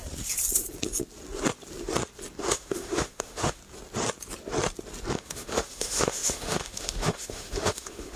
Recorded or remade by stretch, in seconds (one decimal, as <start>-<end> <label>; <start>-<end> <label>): 0.0-2.4 recorded; 2.4-3.6 remade; 3.6-5.1 recorded; 5.1-8.2 remade